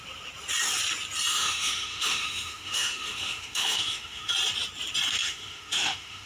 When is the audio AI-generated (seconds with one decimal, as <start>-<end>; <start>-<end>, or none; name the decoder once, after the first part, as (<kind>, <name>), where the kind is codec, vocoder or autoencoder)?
1.3-4.3 (autoencoder, DAC-VAE); 5.2-6.3